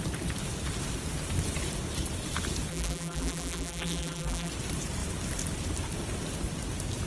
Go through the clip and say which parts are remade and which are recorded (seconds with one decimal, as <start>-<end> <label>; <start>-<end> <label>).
0.0-2.7 recorded; 2.7-4.5 remade; 4.5-7.1 recorded